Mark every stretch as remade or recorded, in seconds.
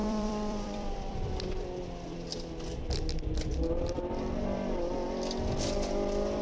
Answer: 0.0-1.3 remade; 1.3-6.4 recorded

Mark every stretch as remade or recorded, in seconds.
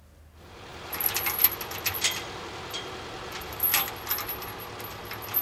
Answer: 0.0-0.7 recorded; 0.7-3.9 remade; 3.9-5.4 recorded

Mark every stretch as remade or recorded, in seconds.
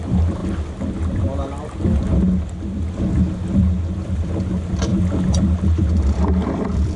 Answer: 0.0-0.4 remade; 0.4-3.9 recorded; 3.9-4.9 remade; 4.9-5.8 recorded; 5.8-7.0 remade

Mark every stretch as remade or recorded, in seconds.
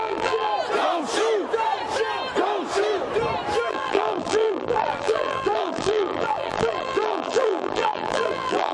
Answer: 0.0-0.5 remade; 0.5-3.7 recorded; 3.7-8.7 remade